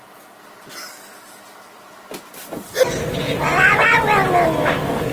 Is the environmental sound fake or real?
real